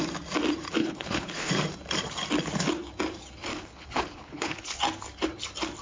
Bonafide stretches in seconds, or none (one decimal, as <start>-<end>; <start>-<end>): 0.0-0.8; 1.5-3.5; 4.8-5.8